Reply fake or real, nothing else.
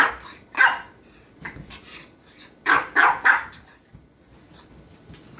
real